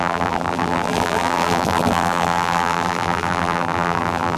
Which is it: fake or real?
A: fake